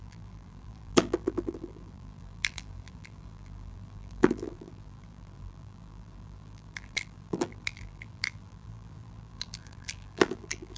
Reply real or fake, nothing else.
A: fake